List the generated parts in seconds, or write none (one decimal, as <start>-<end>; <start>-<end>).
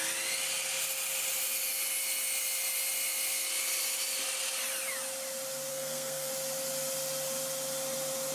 5.7-6.3